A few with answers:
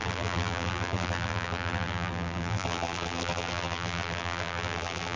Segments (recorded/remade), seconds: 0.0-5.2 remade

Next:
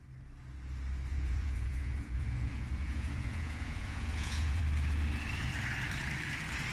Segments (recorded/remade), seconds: 0.0-1.1 recorded; 1.1-4.6 remade; 4.6-6.7 recorded

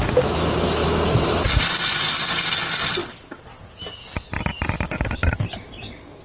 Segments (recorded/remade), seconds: 0.0-0.8 recorded; 0.8-1.6 remade; 1.6-3.0 recorded; 3.0-4.6 remade; 4.6-6.2 recorded

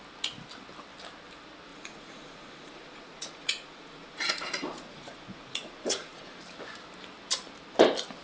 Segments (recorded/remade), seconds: 0.0-1.7 recorded; 1.7-6.4 remade; 6.4-8.2 recorded